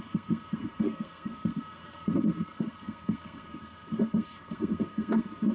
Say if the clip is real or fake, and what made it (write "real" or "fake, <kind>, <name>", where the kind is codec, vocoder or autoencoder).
fake, codec, SNAC